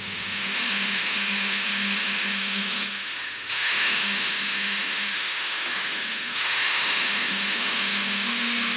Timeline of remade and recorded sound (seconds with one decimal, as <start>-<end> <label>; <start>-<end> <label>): 0.0-8.8 remade